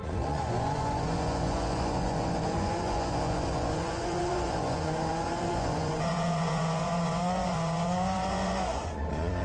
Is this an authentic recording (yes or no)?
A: no